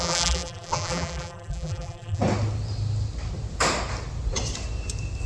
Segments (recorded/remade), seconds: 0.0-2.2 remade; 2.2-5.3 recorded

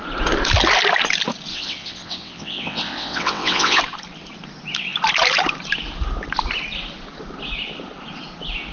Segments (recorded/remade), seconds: 0.0-1.5 recorded; 1.5-3.8 remade; 3.8-8.7 recorded

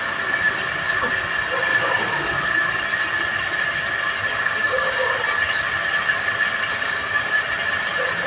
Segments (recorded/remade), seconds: 0.0-1.7 recorded; 1.7-2.5 remade; 2.5-4.3 recorded; 4.3-5.1 remade; 5.1-6.7 recorded; 6.7-7.3 remade; 7.3-8.3 recorded

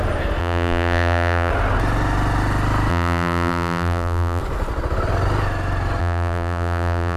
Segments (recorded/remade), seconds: 0.0-0.4 recorded; 0.4-1.5 remade; 1.5-2.9 recorded; 2.9-4.4 remade; 4.4-6.0 recorded; 6.0-7.2 remade

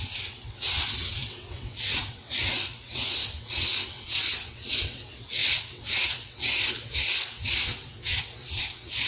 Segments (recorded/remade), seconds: 0.0-9.1 remade